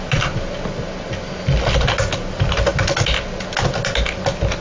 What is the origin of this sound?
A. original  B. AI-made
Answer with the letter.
A